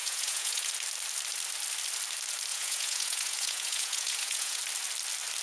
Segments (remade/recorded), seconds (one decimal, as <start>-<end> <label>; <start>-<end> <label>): 0.0-0.7 remade; 0.7-2.5 recorded; 2.5-4.6 remade; 4.6-5.4 recorded